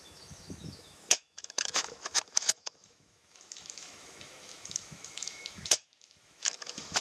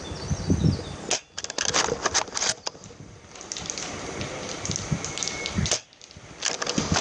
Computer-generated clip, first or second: first